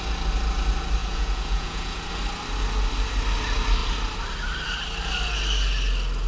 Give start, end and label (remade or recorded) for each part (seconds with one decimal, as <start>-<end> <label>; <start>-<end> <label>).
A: 0.0-1.0 recorded; 1.0-2.1 remade; 2.1-6.3 recorded